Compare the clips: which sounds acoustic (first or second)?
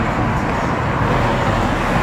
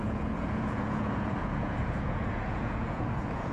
first